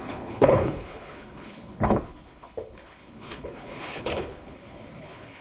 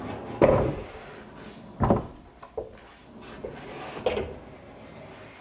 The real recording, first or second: second